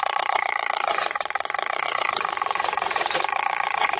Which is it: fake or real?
fake